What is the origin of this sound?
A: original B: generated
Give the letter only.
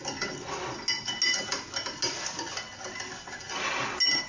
A